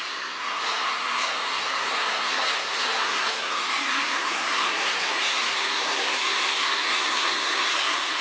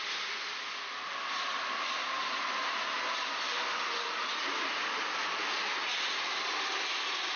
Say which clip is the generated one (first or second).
first